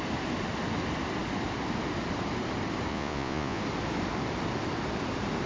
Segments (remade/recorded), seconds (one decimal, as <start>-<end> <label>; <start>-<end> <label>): 0.0-2.9 recorded; 2.9-3.6 remade; 3.6-5.5 recorded